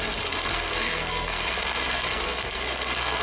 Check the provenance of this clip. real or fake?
fake